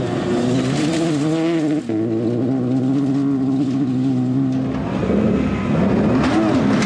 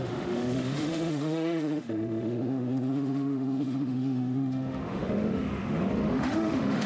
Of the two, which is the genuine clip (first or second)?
first